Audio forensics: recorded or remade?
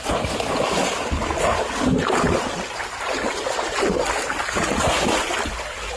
recorded